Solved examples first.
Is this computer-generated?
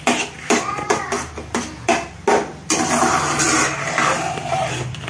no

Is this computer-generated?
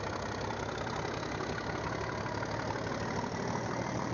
no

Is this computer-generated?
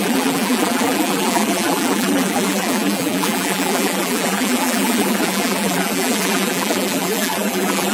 yes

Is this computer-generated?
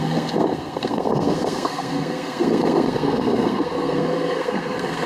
yes